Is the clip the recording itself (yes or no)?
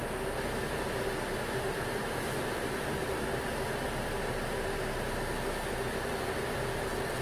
yes